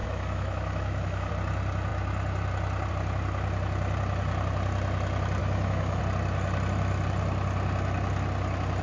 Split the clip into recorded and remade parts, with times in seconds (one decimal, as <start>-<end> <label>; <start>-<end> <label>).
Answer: 0.0-1.3 remade; 1.3-5.4 recorded; 5.4-6.0 remade; 6.0-8.8 recorded